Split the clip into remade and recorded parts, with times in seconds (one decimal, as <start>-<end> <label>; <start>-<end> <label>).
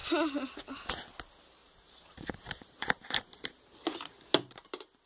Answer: 0.0-1.6 recorded; 1.6-3.7 remade; 3.7-5.1 recorded